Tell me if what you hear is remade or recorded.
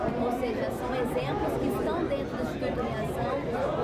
recorded